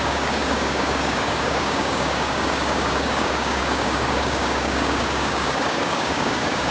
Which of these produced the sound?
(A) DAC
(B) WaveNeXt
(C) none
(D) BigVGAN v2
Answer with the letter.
A